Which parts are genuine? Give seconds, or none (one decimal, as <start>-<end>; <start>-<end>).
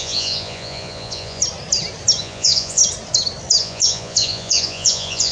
1.4-2.2; 2.8-3.6